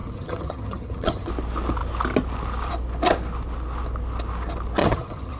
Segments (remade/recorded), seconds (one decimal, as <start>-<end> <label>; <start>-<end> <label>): 0.0-1.3 remade; 1.3-4.8 recorded; 4.8-5.4 remade